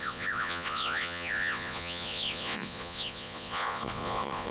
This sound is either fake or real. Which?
fake